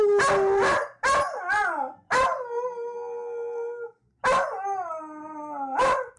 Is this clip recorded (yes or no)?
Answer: yes